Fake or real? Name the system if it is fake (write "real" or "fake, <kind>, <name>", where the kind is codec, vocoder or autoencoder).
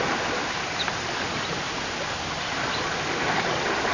real